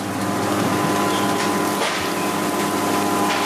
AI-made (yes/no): no